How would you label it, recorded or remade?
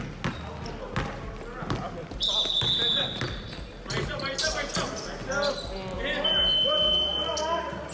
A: recorded